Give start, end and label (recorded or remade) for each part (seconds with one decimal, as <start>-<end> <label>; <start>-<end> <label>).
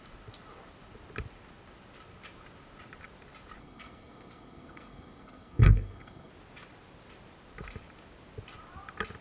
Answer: 0.0-3.6 recorded; 3.6-6.3 remade; 6.3-9.2 recorded